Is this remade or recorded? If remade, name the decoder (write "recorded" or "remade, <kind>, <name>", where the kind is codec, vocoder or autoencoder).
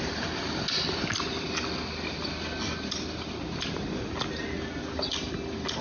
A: recorded